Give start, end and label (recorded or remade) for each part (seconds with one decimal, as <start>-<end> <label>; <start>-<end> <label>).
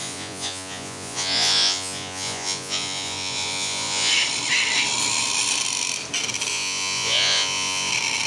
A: 0.0-4.1 remade; 4.1-6.5 recorded; 6.5-7.9 remade; 7.9-8.3 recorded